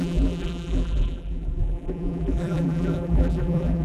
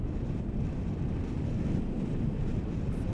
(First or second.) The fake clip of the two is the first